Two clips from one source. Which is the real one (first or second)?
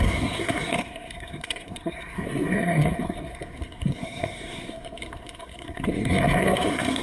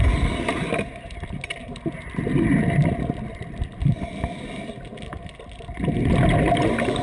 second